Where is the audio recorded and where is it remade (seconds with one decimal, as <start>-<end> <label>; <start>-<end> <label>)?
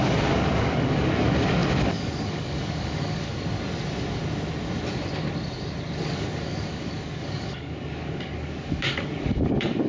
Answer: 0.0-3.3 remade; 3.3-6.1 recorded; 6.1-9.9 remade